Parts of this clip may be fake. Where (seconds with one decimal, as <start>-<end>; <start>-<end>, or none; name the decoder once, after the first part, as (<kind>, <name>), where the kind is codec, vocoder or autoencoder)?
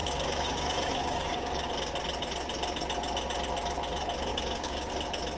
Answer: 0.0-1.7 (codec, DAC); 4.3-4.9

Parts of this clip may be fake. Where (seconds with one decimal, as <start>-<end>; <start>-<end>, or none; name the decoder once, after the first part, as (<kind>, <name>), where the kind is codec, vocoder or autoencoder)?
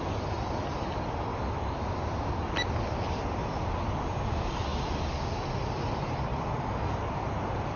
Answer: 1.3-2.3 (vocoder, BigVGAN v2)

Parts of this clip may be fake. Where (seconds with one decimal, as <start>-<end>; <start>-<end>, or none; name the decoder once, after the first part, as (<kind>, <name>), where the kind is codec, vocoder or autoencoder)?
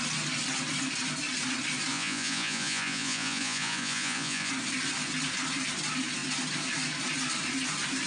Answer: 1.9-4.5 (vocoder, Vocos)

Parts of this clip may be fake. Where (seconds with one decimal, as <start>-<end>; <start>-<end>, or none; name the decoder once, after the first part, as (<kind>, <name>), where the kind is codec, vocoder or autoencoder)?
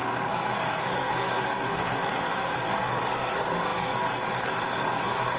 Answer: 0.0-5.4 (codec, SNAC)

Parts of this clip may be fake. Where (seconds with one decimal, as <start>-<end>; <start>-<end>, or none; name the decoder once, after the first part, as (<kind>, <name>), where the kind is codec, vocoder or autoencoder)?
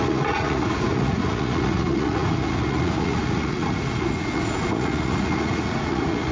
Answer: 0.0-6.3 (vocoder, Vocos)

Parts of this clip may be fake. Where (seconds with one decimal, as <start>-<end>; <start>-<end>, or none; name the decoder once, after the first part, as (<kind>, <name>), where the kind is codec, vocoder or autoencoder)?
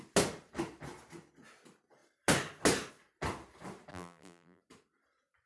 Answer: 3.9-4.6 (vocoder, BigVGAN v2)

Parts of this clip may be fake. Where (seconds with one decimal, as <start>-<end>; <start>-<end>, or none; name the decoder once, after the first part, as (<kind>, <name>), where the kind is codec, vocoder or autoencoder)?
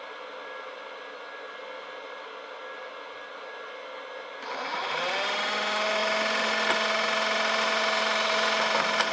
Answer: none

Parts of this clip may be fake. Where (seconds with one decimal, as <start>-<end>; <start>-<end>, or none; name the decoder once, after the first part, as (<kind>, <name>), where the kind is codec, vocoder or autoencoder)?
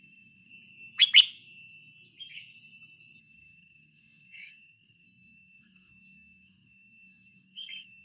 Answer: 0.0-0.5 (codec, SNAC); 3.2-8.0